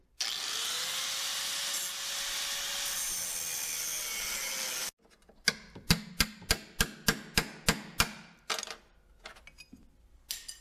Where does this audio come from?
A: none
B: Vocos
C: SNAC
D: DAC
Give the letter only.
A